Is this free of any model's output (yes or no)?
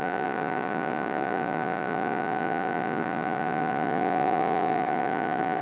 no